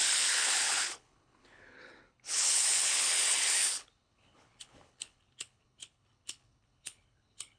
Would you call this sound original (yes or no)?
no